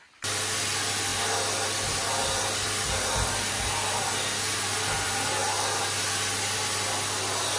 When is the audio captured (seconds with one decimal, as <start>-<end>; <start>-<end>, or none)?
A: 0.0-7.6